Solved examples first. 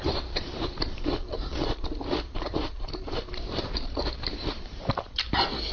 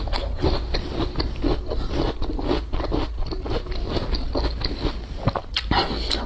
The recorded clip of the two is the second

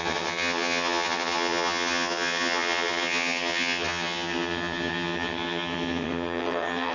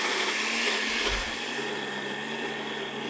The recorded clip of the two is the second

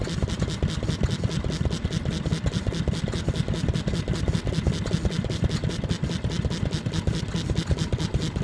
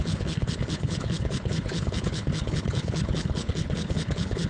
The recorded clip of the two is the first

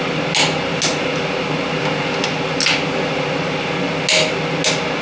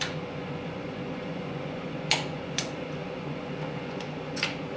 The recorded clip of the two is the first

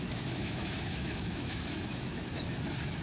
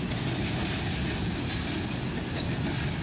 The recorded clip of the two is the second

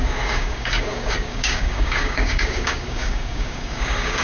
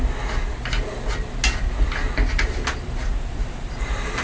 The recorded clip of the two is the second